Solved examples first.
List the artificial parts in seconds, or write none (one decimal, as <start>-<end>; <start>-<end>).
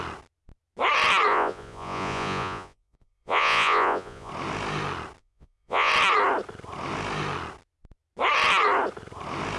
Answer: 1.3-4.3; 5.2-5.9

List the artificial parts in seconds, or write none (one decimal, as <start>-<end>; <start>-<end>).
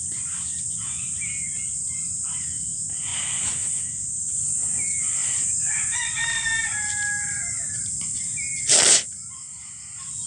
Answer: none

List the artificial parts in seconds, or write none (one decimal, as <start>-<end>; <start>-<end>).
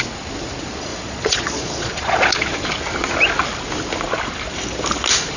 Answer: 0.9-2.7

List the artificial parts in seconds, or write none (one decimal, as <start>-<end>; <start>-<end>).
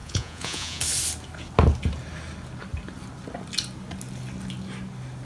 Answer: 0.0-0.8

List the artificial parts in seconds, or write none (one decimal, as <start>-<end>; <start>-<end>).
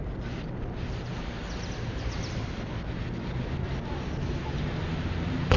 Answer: none